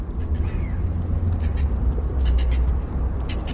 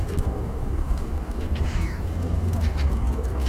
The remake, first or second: second